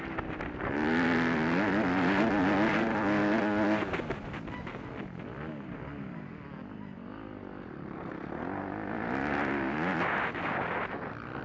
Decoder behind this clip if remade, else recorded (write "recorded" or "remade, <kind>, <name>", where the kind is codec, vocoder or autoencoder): recorded